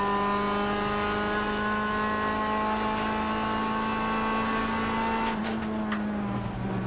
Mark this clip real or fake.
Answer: real